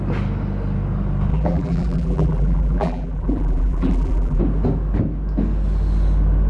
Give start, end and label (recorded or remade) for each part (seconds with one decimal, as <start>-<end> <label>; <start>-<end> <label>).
0.0-1.3 recorded; 1.3-4.4 remade; 4.4-6.5 recorded